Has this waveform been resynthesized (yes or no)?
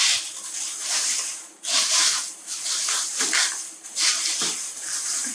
no